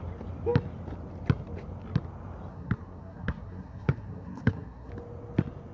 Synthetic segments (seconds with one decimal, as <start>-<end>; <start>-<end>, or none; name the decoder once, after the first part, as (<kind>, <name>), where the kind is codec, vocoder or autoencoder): 2.5-4.9 (codec, SNAC)